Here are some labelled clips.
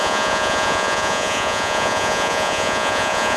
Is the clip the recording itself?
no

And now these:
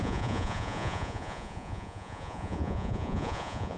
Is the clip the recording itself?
no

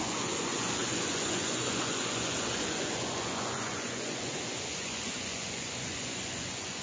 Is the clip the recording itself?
no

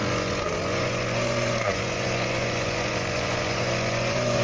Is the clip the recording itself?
no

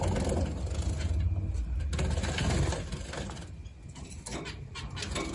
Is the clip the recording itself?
yes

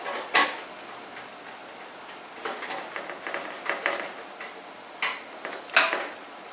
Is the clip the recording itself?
yes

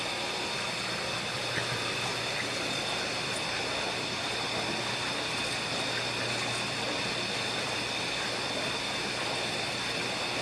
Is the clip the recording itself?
yes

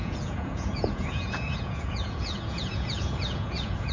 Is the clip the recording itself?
no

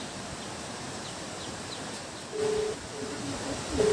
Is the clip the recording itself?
yes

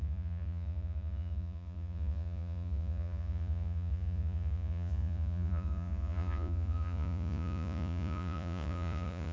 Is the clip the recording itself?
no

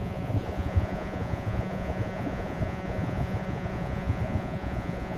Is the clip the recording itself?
no